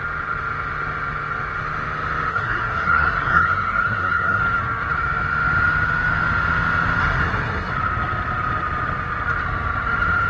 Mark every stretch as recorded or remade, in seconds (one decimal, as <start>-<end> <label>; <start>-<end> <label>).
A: 0.0-2.3 recorded; 2.3-4.4 remade; 4.4-7.0 recorded; 7.0-7.7 remade; 7.7-10.3 recorded